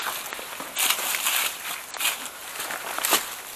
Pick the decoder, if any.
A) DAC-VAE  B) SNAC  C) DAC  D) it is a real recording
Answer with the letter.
D